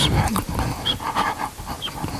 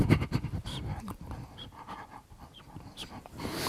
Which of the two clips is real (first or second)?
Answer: first